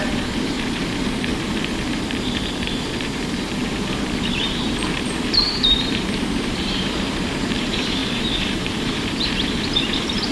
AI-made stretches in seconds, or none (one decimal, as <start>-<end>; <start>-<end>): 0.0-1.3; 1.9-10.3